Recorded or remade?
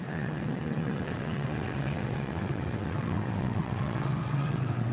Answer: remade